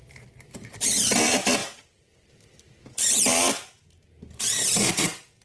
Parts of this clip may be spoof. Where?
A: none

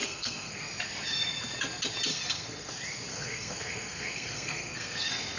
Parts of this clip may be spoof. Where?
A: 0.0-0.6; 2.1-2.7; 3.1-5.4

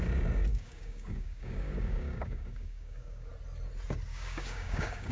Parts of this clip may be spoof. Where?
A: 0.5-3.3; 4.1-5.1

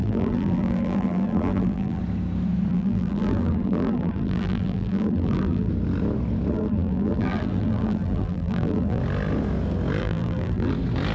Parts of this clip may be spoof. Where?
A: 0.0-2.0; 2.7-5.7; 6.5-9.0; 10.0-10.7

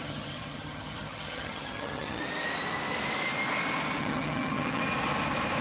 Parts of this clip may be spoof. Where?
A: 0.0-2.2; 4.0-4.8

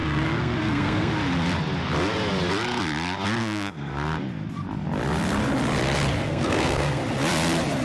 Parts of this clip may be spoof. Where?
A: 0.0-1.1; 3.4-3.9; 6.2-7.0

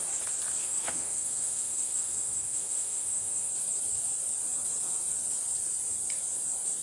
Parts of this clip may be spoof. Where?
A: 0.6-3.5